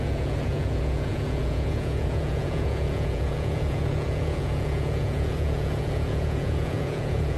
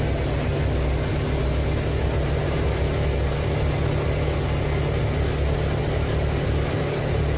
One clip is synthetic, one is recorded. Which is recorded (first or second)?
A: second